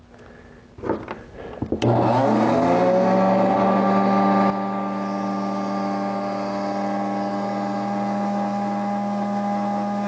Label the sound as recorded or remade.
recorded